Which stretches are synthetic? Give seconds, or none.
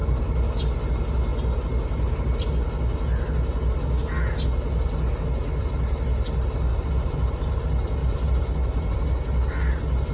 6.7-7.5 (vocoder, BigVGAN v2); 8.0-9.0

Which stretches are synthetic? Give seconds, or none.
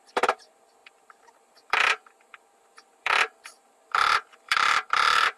0.0-5.4 (vocoder, BigVGAN v2)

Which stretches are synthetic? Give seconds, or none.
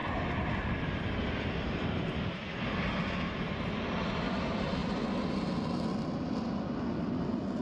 none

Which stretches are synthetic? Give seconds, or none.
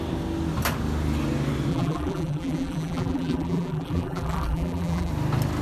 1.7-5.1 (vocoder, BigVGAN v2)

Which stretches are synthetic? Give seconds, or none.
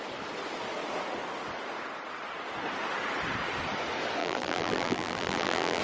4.2-5.8 (vocoder, BigVGAN v2)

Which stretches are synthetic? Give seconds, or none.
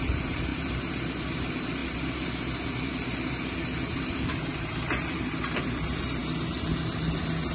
0.0-6.2 (vocoder, BigVGAN v2)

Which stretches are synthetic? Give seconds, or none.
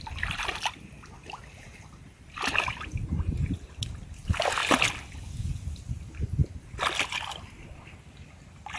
0.0-4.6 (vocoder, BigVGAN v2); 5.7-8.8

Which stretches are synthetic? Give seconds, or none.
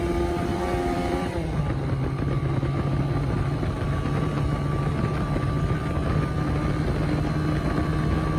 0.5-2.5 (vocoder, BigVGAN v2)